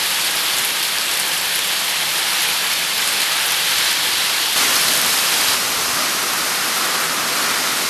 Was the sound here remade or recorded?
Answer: remade